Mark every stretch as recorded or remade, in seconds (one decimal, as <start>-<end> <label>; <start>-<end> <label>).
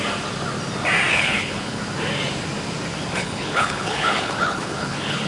0.0-1.1 recorded; 1.1-1.8 remade; 1.8-3.2 recorded; 3.2-5.3 remade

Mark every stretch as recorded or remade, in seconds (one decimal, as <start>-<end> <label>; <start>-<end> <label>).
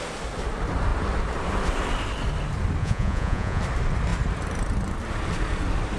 0.0-2.8 recorded; 2.8-3.6 remade; 3.6-6.0 recorded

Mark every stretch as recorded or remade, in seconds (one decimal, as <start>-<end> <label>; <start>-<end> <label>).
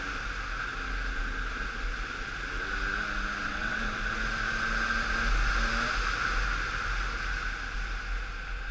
0.0-3.4 recorded; 3.4-4.0 remade; 4.0-8.7 recorded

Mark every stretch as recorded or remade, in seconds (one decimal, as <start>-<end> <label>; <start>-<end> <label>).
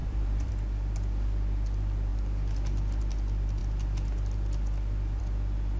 0.0-0.5 remade; 0.5-5.8 recorded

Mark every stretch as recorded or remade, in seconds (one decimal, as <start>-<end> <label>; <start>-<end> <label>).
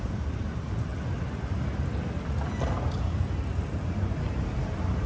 0.0-0.9 remade; 0.9-4.0 recorded; 4.0-5.1 remade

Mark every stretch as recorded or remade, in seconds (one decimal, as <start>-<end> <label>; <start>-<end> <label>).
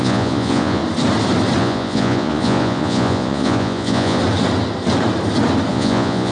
0.0-0.8 remade; 0.8-1.6 recorded; 1.6-4.2 remade; 4.2-5.7 recorded; 5.7-6.3 remade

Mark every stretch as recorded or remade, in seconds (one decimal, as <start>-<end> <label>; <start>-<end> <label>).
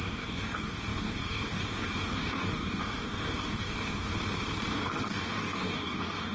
0.0-4.1 remade; 4.1-4.7 recorded; 4.7-6.3 remade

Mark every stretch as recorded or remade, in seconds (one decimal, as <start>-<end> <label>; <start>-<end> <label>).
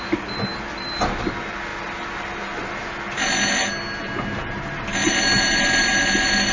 0.0-6.5 recorded